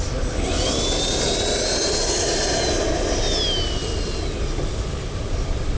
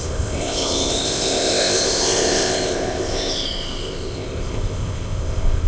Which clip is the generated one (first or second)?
second